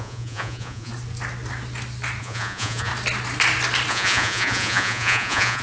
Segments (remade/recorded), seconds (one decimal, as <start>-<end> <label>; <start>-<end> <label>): 0.0-0.9 remade; 0.9-2.2 recorded; 2.2-2.9 remade; 2.9-3.9 recorded; 3.9-5.6 remade